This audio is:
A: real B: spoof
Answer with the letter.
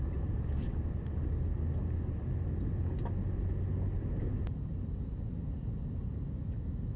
A